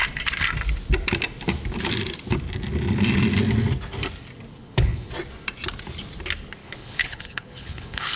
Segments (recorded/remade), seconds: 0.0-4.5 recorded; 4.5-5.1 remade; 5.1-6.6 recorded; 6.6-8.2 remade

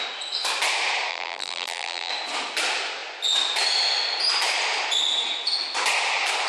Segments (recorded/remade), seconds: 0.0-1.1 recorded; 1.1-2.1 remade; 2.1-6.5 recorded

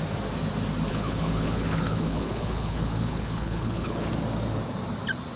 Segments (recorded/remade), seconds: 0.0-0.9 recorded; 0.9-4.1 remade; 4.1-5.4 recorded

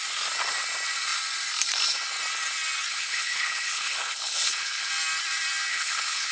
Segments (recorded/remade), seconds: 0.0-2.9 recorded; 2.9-4.9 remade; 4.9-5.7 recorded; 5.7-6.3 remade